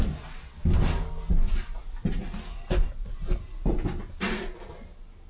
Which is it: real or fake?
real